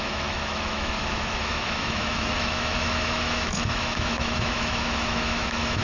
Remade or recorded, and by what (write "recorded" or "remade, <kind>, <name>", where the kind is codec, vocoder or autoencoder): remade, autoencoder, DAC-VAE